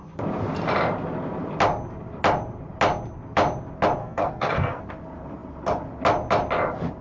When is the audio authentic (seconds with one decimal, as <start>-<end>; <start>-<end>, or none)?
0.0-4.0; 4.8-7.0